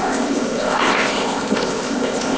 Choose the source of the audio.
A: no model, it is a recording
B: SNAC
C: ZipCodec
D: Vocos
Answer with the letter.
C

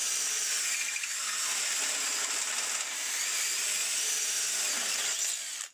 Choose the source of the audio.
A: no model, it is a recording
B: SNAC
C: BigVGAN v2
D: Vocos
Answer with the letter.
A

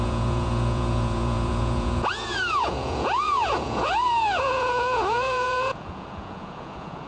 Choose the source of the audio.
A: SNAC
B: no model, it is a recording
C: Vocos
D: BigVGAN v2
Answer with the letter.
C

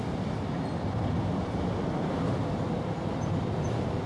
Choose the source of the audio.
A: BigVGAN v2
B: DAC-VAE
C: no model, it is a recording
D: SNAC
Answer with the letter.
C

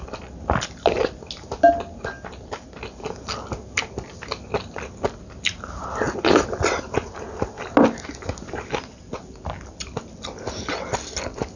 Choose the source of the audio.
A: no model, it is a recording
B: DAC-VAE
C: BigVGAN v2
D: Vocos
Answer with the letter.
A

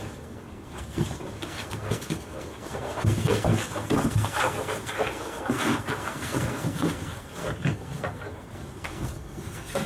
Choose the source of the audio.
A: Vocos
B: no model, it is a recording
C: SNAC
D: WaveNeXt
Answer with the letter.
C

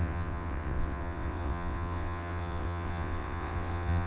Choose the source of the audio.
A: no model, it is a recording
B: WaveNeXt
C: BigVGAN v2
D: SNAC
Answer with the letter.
B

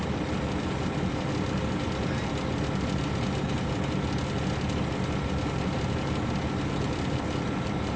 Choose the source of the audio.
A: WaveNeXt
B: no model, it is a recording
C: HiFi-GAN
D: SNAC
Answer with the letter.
B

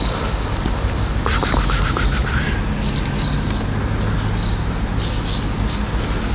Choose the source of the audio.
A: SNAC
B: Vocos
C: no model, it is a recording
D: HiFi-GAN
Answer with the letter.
C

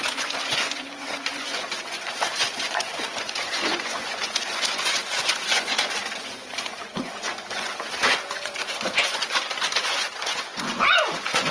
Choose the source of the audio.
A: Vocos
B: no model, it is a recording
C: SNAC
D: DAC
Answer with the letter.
A